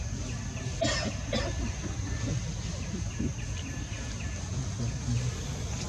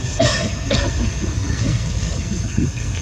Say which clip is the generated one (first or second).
second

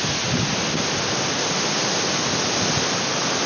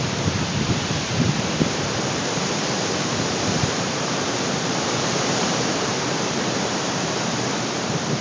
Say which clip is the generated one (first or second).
second